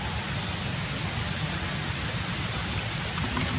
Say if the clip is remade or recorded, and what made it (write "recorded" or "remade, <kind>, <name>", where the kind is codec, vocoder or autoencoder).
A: recorded